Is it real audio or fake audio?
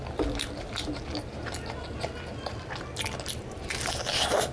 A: real